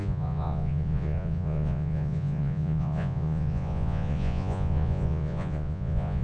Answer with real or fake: fake